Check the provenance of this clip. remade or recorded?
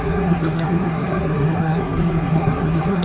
remade